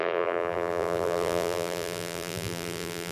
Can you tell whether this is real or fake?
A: fake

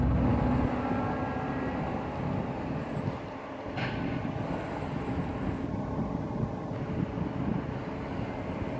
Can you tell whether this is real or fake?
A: real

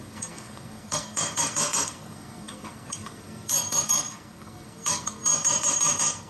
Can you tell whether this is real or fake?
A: fake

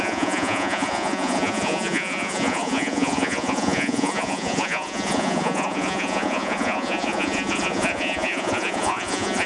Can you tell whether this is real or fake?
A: fake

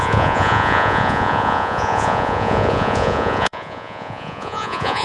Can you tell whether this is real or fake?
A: fake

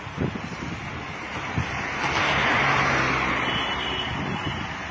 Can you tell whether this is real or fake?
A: real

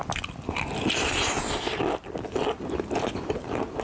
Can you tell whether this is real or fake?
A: real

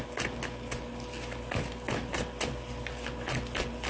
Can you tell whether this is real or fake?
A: real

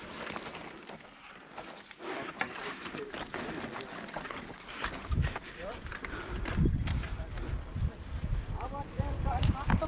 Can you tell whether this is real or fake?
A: real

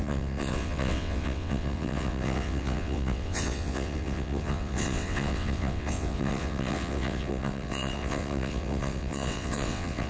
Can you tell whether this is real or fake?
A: fake